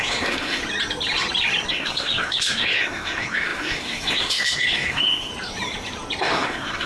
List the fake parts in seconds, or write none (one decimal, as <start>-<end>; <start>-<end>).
0.0-0.6; 1.7-5.3; 6.2-6.9